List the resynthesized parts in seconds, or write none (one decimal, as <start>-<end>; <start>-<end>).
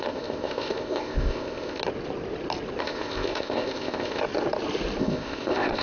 0.0-1.8; 2.8-4.2; 5.0-5.8